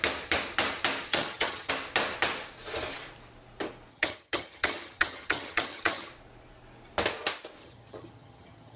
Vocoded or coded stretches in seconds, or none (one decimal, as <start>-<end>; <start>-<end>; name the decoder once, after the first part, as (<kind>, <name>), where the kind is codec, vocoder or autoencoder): 1.1-1.7 (vocoder, HiFi-GAN); 3.9-6.1; 7.6-8.8

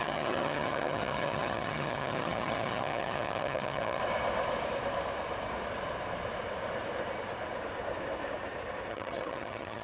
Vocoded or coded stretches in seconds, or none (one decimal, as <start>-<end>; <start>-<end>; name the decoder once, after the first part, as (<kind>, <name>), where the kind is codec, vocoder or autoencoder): 0.0-4.0 (vocoder, HiFi-GAN); 8.9-9.8

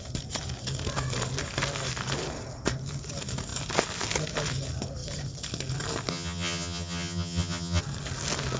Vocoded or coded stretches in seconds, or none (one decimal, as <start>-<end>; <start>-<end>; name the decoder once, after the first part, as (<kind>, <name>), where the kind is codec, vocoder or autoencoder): 6.1-7.8 (vocoder, HiFi-GAN)